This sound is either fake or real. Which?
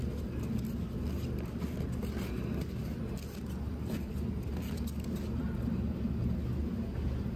real